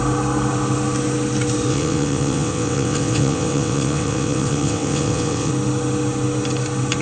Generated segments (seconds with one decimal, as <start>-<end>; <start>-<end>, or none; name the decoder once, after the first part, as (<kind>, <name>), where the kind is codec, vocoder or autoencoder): 1.7-5.5 (vocoder, WaveNeXt)